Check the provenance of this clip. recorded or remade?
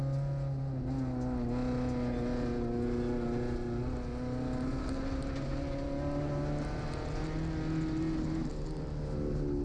recorded